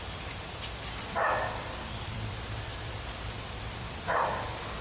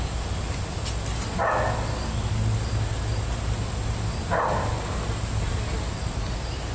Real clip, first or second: second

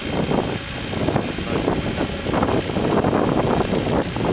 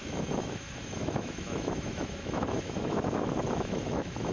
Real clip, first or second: first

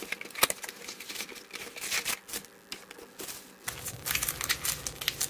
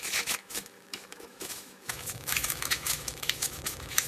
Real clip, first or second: first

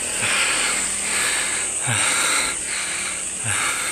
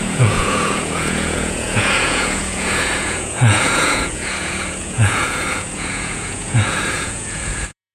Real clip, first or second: first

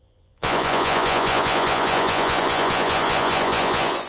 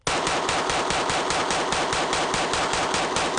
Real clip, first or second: second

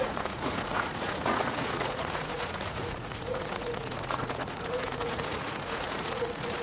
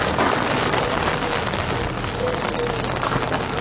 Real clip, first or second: second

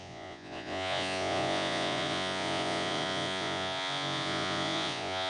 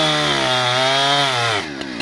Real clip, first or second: second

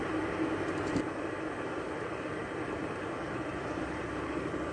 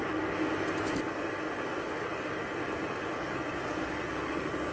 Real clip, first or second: second